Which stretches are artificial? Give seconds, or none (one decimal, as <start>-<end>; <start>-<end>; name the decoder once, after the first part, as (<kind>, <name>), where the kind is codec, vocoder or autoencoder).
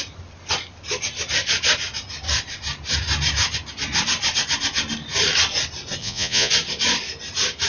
6.0-6.5 (vocoder, Vocos)